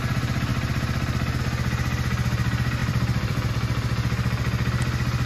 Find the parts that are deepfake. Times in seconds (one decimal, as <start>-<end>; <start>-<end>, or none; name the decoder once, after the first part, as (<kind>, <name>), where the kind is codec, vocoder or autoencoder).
0.5-1.4 (vocoder, BigVGAN v2); 2.8-3.5